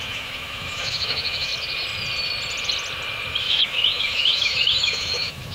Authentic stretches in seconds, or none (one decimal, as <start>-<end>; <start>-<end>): 1.5-3.4

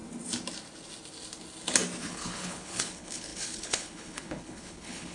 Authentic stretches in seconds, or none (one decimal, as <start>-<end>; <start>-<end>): 0.0-2.0